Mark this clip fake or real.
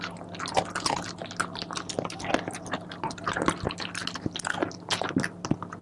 real